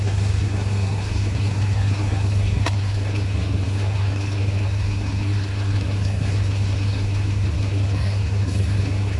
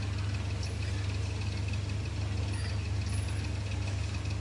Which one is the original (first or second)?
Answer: second